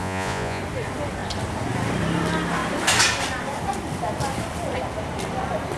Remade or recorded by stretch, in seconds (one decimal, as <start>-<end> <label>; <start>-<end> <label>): 0.0-0.6 remade; 0.6-5.8 recorded